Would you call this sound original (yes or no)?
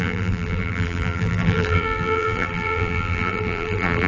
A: no